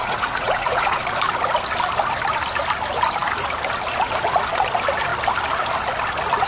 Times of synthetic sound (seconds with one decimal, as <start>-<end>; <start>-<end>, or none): 0.0-1.0